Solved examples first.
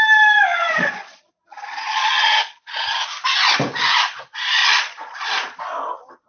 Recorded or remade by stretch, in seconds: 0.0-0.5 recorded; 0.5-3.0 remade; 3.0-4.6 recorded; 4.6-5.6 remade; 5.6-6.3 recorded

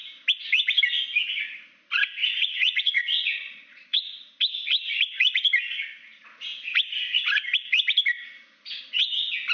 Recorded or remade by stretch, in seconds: 0.0-2.2 recorded; 2.2-4.1 remade; 4.1-9.5 recorded

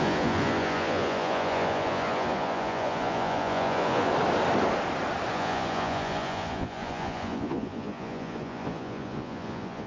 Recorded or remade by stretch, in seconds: 0.0-4.1 remade; 4.1-5.3 recorded; 5.3-9.9 remade